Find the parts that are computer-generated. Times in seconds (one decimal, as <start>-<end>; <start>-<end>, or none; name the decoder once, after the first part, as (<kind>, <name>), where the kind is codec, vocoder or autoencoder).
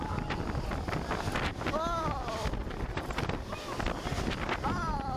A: none